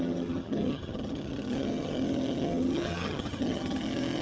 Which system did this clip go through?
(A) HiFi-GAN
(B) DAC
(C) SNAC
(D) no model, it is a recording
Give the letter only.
A